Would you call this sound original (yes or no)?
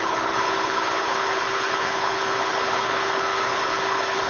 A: no